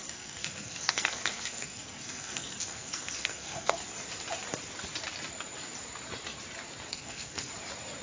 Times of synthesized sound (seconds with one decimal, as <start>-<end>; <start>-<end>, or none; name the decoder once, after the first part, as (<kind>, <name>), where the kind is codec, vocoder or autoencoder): 0.0-3.8 (codec, SNAC); 6.9-7.5